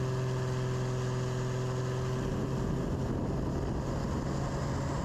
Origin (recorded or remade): recorded